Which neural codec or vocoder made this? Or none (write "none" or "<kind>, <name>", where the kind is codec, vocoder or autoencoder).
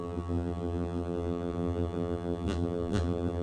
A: vocoder, BigVGAN v2